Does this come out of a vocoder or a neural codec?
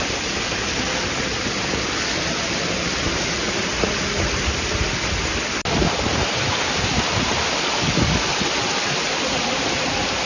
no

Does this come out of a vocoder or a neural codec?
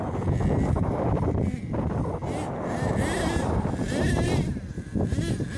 no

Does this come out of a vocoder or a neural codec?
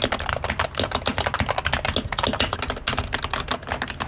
no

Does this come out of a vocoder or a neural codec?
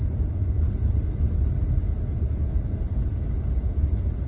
no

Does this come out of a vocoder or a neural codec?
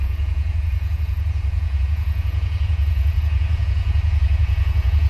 yes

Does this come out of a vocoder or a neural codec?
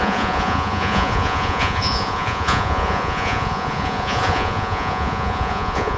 yes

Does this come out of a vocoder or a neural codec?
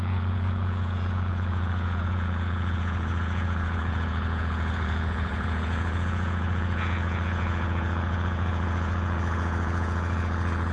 yes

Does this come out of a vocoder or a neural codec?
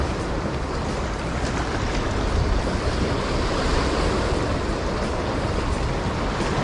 no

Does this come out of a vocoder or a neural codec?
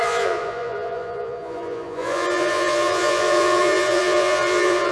yes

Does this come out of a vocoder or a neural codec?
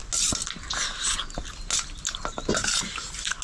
no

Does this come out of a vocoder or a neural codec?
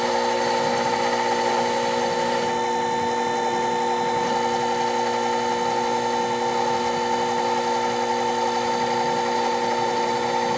no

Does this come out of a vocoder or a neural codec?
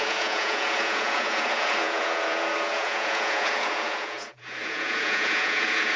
yes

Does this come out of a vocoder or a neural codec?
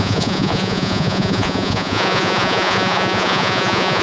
yes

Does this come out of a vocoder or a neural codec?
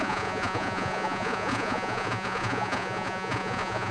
yes